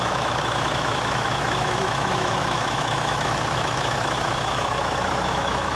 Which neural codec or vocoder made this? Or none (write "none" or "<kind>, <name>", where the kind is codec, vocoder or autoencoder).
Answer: autoencoder, DAC-VAE